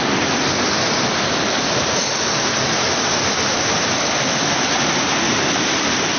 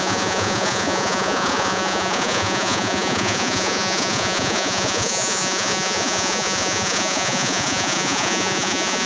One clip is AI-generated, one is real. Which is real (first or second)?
first